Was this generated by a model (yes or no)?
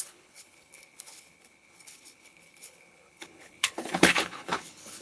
yes